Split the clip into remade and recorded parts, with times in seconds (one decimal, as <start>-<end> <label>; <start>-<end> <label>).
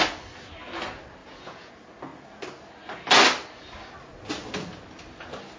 0.0-1.2 recorded; 1.2-1.7 remade; 1.7-5.6 recorded